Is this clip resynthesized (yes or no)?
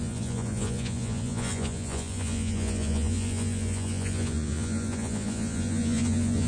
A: yes